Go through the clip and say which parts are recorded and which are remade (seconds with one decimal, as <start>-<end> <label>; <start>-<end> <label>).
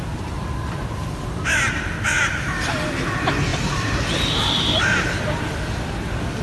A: 0.0-6.4 recorded